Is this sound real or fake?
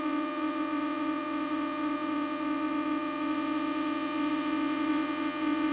fake